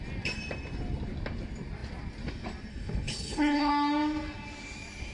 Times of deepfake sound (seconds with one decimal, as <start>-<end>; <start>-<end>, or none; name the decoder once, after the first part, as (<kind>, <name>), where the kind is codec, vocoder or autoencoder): 2.7-3.7 (codec, HILCodec)